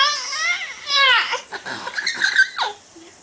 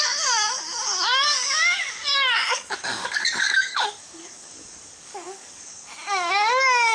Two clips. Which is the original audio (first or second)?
first